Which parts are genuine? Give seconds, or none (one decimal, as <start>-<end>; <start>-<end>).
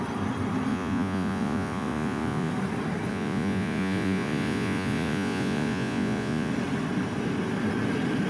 0.0-0.7; 2.5-3.1; 6.5-8.3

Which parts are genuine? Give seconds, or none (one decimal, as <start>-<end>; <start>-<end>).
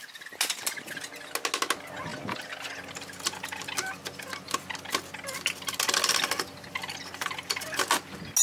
0.0-8.4